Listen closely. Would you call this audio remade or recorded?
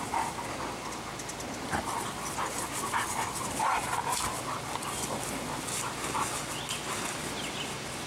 recorded